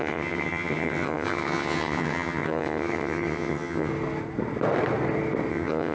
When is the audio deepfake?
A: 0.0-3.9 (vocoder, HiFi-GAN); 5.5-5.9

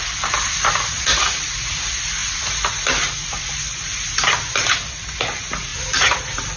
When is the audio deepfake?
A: none

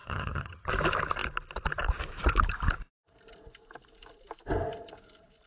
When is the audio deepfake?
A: 0.0-0.7 (vocoder, HiFi-GAN)

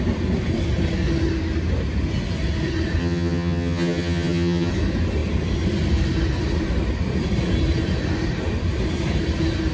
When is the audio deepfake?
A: 3.0-4.7 (vocoder, HiFi-GAN)

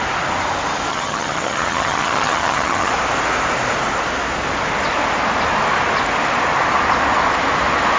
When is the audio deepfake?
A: 0.9-2.9 (vocoder, HiFi-GAN)

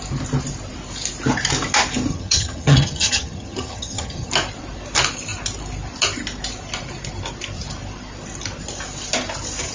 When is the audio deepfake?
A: 2.1-4.3 (vocoder, HiFi-GAN)